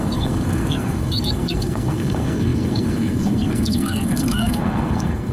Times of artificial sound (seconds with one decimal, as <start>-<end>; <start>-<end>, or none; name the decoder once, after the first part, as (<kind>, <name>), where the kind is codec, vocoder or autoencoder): 0.0-5.3 (codec, SNAC)